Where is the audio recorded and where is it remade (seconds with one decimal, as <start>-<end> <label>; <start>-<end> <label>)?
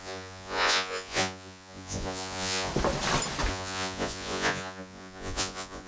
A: 0.0-2.7 remade; 2.7-3.5 recorded; 3.5-5.9 remade